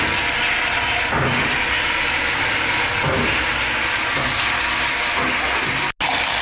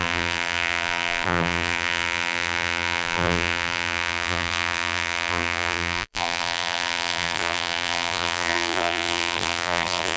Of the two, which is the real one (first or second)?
first